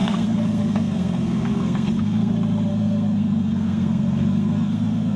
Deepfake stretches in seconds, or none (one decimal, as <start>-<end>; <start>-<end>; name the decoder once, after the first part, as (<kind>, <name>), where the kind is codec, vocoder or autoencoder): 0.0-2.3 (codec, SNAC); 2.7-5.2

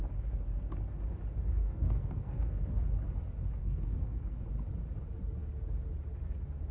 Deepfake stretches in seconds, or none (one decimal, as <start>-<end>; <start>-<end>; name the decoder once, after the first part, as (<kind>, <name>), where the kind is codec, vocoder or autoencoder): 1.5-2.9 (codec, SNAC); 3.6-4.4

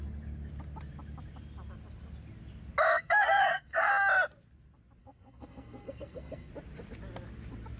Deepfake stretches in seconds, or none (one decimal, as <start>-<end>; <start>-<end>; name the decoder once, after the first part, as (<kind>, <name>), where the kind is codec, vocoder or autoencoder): 2.9-3.9 (codec, SNAC); 5.0-6.5